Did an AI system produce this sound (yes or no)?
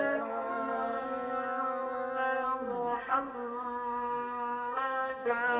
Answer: yes